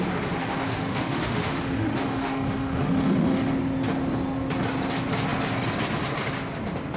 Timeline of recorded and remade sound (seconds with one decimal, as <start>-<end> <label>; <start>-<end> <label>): 0.0-0.4 recorded; 0.4-3.5 remade; 3.5-7.0 recorded